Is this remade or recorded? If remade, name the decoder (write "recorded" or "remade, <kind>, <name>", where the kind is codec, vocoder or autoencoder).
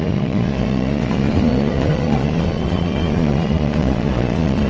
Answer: remade, vocoder, Vocos